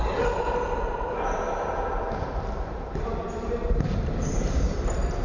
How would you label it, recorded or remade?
remade